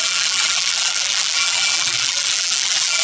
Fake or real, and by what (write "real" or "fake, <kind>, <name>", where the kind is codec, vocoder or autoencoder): fake, vocoder, BigVGAN v2